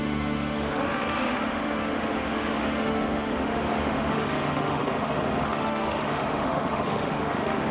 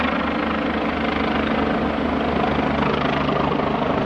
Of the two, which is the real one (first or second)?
second